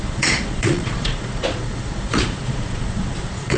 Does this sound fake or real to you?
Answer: fake